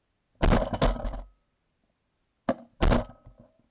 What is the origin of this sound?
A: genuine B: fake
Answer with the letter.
A